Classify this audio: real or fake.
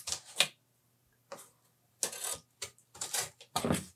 real